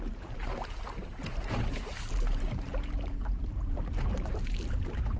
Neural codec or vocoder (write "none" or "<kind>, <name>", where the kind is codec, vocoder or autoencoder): vocoder, BigVGAN v2